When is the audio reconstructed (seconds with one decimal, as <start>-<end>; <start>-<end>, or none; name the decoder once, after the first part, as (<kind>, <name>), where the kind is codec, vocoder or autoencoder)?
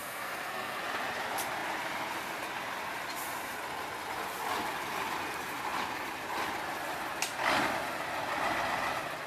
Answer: 0.0-0.8 (codec, SNAC)